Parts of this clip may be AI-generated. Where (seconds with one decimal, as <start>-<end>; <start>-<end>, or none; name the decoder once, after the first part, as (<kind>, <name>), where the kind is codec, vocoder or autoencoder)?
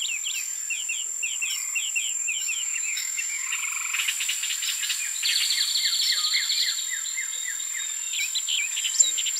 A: 2.1-3.5 (autoencoder, DAC-VAE)